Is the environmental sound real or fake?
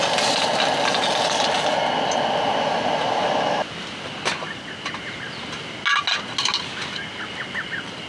real